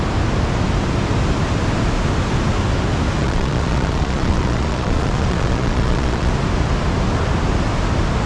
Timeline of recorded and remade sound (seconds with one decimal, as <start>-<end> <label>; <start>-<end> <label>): 0.0-3.2 recorded; 3.2-6.3 remade; 6.3-8.3 recorded